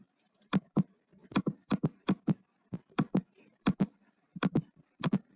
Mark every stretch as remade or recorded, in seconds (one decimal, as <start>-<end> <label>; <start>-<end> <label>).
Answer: 0.0-5.4 remade